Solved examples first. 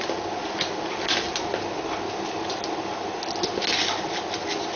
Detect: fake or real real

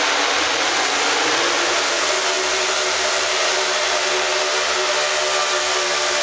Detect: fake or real real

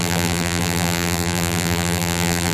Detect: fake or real fake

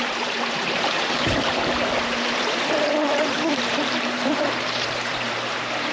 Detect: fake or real fake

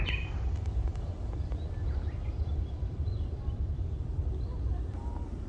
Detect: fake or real fake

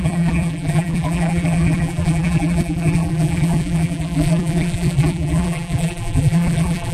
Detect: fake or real fake